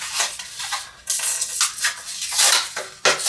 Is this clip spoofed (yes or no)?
no